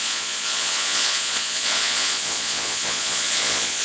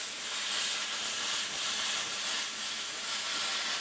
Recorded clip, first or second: second